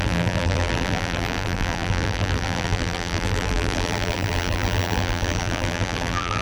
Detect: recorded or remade remade